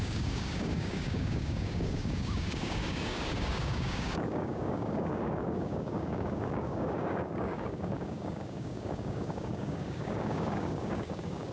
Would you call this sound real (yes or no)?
no